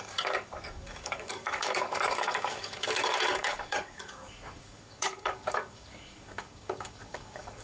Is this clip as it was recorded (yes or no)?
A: no